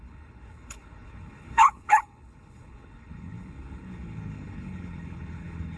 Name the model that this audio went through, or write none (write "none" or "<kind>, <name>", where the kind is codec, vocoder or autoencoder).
codec, HILCodec